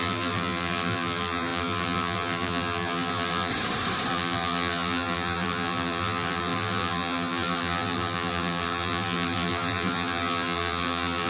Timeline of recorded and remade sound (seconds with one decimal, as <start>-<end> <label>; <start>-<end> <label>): 0.0-3.5 remade; 3.5-4.1 recorded; 4.1-11.3 remade